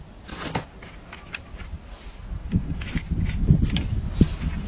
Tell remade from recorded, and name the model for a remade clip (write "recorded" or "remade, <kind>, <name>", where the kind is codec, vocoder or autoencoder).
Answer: recorded